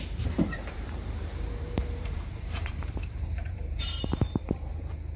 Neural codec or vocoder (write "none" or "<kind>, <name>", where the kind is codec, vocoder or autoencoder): vocoder, BigVGAN v2